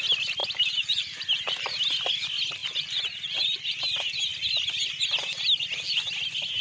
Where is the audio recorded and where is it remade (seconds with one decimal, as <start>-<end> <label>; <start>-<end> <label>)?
0.0-0.4 recorded; 0.4-1.7 remade; 1.7-2.6 recorded; 2.6-3.8 remade; 3.8-6.6 recorded